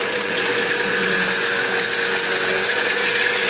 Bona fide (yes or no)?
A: no